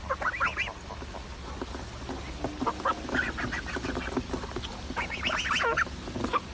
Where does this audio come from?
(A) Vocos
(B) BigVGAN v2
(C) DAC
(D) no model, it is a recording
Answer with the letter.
D